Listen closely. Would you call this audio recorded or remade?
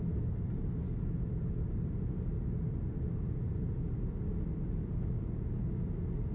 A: recorded